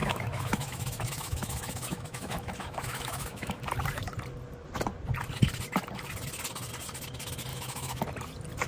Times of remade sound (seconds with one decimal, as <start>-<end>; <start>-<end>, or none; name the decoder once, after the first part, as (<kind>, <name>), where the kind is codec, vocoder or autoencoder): 0.0-3.6 (autoencoder, DAC-VAE); 7.5-8.0